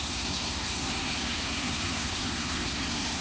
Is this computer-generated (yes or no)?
yes